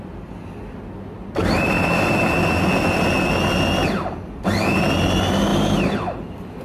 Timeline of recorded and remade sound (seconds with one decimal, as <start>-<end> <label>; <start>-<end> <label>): 0.0-1.4 recorded; 1.4-2.2 remade; 2.2-5.5 recorded; 5.5-6.6 remade